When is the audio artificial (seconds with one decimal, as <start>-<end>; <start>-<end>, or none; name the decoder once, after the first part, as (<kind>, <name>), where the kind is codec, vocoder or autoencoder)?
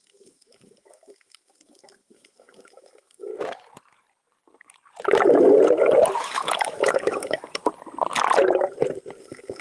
0.0-3.3 (autoencoder, DAC-VAE); 6.2-7.6; 9.2-9.6